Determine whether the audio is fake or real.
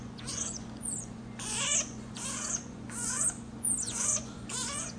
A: fake